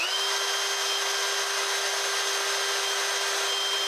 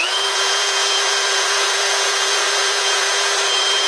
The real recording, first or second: first